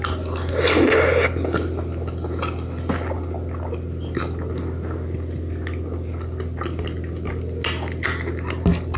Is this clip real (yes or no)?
yes